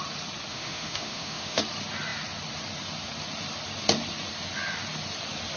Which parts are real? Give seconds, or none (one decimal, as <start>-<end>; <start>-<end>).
0.0-0.5; 1.6-5.6